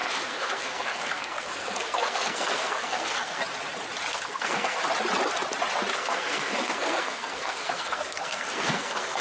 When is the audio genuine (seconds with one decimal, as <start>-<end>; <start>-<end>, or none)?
3.4-4.1; 4.8-5.9